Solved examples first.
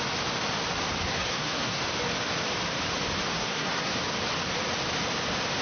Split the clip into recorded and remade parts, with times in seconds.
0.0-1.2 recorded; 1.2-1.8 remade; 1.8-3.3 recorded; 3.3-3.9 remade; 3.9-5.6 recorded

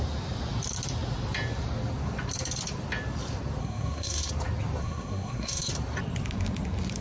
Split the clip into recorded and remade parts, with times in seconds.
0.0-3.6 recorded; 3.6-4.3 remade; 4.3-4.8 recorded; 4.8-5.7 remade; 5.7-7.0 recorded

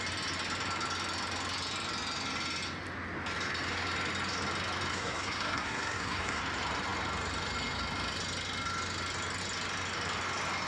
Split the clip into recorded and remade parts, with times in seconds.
0.0-4.9 recorded; 4.9-6.4 remade; 6.4-10.7 recorded

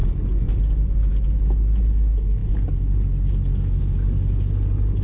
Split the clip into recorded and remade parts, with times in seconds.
0.0-5.0 recorded

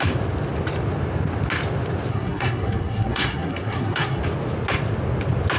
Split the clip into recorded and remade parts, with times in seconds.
0.0-2.1 recorded; 2.1-4.2 remade; 4.2-5.6 recorded

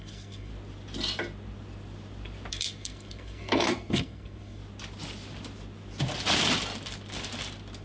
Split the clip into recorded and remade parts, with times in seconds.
0.0-0.5 remade; 0.5-2.5 recorded; 2.5-4.6 remade; 4.6-7.8 recorded